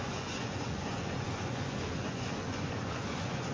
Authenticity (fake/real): fake